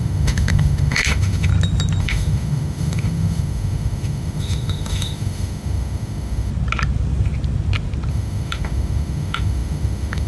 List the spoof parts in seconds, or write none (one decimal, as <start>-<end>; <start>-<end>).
0.0-1.5; 2.0-6.5; 8.1-10.3